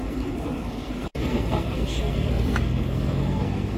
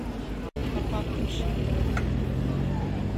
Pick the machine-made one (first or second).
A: first